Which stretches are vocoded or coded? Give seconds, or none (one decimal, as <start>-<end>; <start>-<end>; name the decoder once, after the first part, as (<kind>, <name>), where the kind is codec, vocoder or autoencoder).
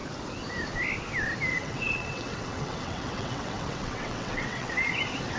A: 1.5-4.7 (vocoder, WaveNeXt)